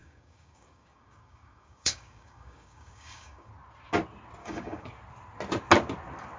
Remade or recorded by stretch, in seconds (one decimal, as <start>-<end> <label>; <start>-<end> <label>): 0.0-3.5 remade; 3.5-4.4 recorded; 4.4-4.9 remade; 4.9-6.4 recorded